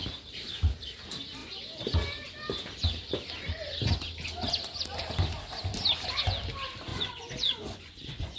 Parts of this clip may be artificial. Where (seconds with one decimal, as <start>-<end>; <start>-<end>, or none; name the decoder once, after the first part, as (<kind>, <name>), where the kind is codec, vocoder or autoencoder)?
6.9-8.4 (vocoder, Vocos)